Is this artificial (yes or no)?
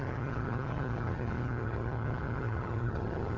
yes